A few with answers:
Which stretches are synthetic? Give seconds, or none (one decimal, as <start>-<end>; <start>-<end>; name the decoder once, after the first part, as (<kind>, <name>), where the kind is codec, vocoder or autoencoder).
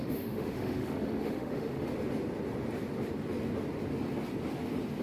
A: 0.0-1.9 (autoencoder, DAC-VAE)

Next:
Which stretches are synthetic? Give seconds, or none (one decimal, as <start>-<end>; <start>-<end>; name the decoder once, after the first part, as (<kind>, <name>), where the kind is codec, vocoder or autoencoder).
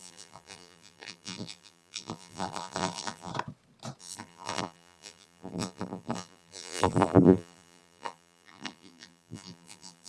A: 0.0-3.3 (vocoder, BigVGAN v2); 4.0-10.1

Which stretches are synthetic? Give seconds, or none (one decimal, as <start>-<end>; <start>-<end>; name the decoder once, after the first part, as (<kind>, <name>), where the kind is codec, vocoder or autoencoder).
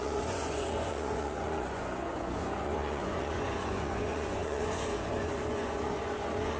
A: 0.0-6.6 (vocoder, Vocos)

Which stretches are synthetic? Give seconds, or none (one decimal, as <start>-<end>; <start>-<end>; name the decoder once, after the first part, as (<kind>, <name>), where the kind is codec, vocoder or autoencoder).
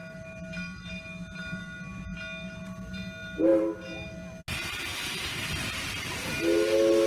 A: none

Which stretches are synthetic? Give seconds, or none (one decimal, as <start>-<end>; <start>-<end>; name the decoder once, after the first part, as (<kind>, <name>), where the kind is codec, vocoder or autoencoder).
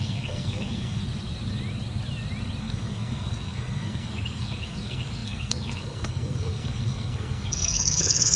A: 0.0-1.0 (codec, SNAC); 2.6-8.4